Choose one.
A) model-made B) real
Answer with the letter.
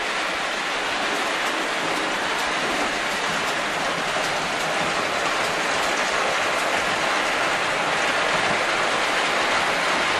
B